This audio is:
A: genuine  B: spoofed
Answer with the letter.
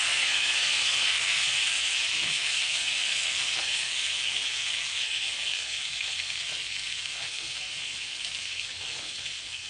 B